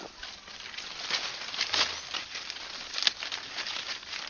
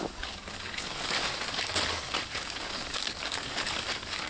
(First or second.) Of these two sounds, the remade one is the second